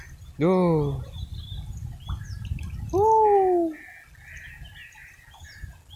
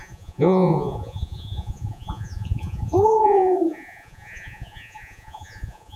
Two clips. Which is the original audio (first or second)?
first